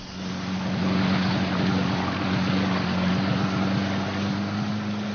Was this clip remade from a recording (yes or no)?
no